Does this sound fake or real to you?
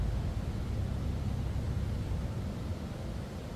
real